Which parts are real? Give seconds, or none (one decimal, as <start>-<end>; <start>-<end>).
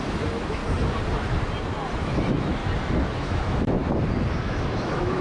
0.6-2.0; 2.6-3.2; 3.8-4.4